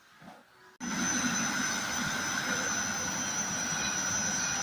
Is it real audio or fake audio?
real